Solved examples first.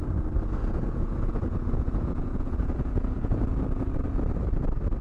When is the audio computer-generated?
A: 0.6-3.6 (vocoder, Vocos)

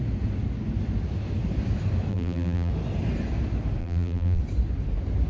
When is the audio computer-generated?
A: 2.1-2.7 (vocoder, BigVGAN v2); 3.8-4.4

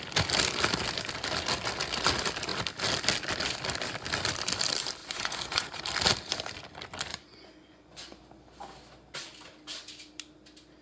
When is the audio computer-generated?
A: 5.0-5.8 (vocoder, Vocos); 7.1-8.2

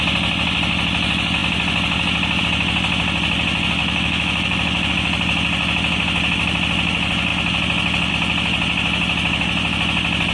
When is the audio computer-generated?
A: 3.8-4.9 (autoencoder, DAC-VAE)

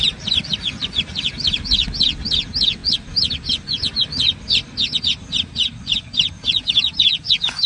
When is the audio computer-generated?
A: none

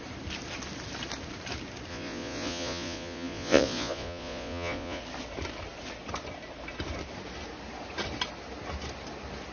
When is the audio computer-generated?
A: 1.9-5.0 (vocoder, Vocos)

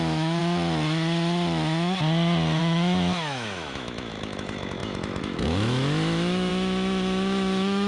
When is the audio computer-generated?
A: 0.0-0.4 (autoencoder, DAC-VAE); 2.6-7.9

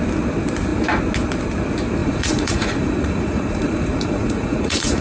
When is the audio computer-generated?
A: 2.0-5.0 (vocoder, Vocos)